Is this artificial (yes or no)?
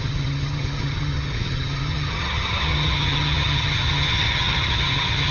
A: yes